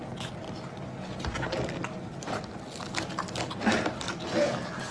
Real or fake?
real